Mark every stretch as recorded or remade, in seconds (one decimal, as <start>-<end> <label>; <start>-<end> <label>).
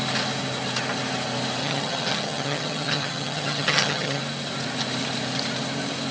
0.0-1.6 recorded; 1.6-4.2 remade; 4.2-6.1 recorded